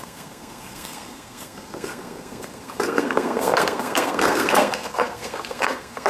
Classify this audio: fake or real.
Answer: fake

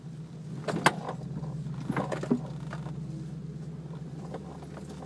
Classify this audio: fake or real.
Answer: real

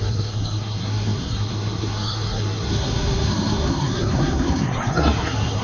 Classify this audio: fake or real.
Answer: fake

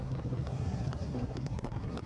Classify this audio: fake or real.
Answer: fake